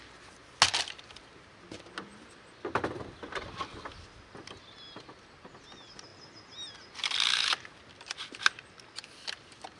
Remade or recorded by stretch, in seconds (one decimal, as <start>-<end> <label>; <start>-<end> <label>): 0.0-9.8 recorded